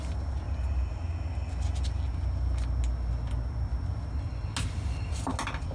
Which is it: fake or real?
real